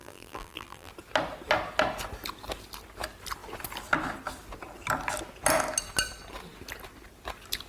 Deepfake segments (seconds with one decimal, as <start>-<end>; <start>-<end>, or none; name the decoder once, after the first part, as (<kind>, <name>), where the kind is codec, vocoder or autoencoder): 0.0-0.9 (vocoder, BigVGAN v2)